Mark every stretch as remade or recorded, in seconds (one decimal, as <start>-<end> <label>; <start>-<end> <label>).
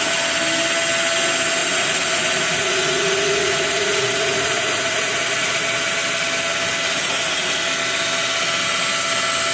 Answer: 0.0-1.6 recorded; 1.6-5.6 remade; 5.6-7.0 recorded; 7.0-7.6 remade; 7.6-9.5 recorded